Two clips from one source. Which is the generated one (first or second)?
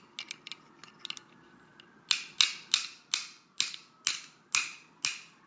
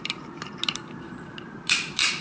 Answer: second